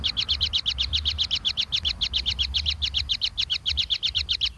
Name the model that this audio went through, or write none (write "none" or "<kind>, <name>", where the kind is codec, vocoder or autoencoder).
none